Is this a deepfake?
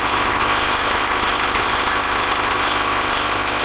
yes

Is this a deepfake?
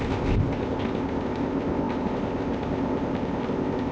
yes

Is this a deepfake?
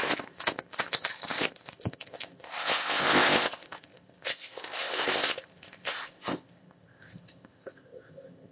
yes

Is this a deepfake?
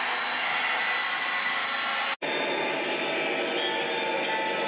no